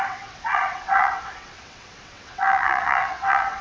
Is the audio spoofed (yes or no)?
yes